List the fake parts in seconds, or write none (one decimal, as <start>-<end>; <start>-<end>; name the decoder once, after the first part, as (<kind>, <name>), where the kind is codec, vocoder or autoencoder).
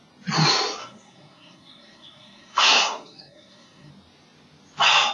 0.8-3.9 (codec, SNAC)